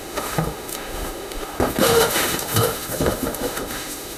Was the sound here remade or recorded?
remade